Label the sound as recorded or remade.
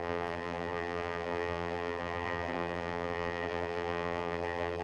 remade